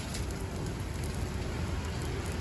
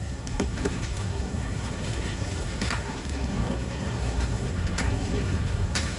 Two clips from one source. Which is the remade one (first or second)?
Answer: second